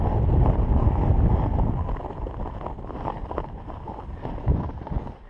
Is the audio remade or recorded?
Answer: recorded